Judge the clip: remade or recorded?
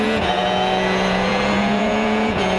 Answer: remade